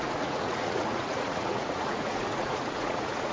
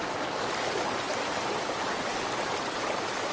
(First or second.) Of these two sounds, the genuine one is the second